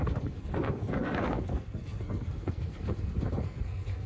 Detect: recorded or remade remade